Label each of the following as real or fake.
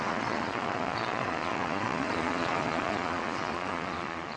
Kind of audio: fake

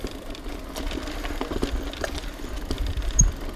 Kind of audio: real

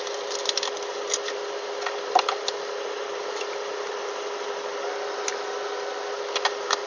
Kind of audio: real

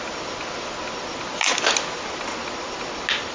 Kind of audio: real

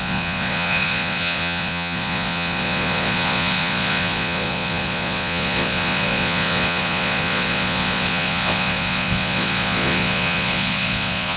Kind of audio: fake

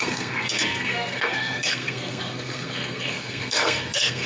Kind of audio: fake